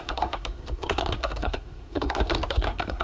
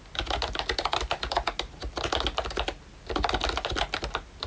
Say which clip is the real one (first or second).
second